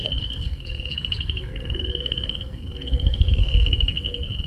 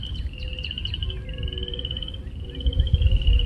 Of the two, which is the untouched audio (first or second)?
second